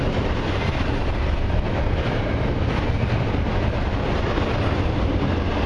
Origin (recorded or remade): recorded